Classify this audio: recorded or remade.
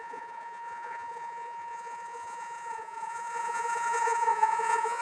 remade